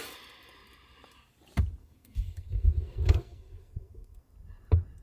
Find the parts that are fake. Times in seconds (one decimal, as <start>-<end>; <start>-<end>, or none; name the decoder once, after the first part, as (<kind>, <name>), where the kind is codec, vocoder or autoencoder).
1.8-4.3 (codec, SNAC)